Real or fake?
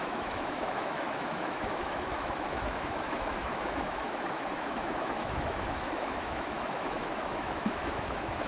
fake